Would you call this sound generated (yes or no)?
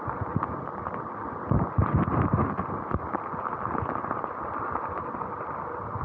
no